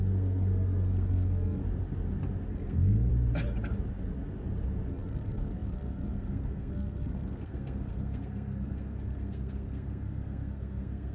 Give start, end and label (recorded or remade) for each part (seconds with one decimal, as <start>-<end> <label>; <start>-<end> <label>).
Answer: 0.0-1.6 remade; 1.6-2.5 recorded; 2.5-3.1 remade; 3.1-4.9 recorded; 4.9-11.1 remade

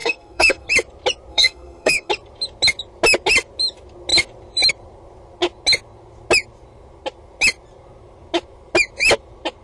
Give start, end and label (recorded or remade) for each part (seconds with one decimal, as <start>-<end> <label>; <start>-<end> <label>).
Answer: 0.0-0.7 remade; 0.7-1.3 recorded; 1.3-2.1 remade; 2.1-9.6 recorded

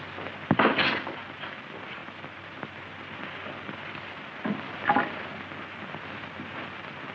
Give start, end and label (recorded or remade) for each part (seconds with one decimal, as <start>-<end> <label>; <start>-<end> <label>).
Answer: 0.0-7.1 recorded

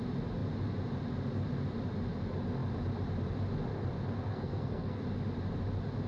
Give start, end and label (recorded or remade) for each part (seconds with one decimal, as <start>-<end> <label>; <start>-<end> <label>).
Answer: 0.0-4.3 recorded; 4.3-5.0 remade; 5.0-6.1 recorded

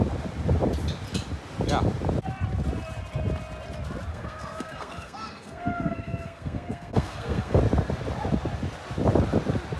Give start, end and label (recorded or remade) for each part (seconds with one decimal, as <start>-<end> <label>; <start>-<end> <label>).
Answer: 0.0-4.1 recorded; 4.1-7.6 remade; 7.6-9.8 recorded